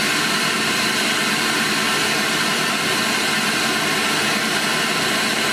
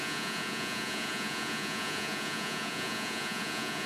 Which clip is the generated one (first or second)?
second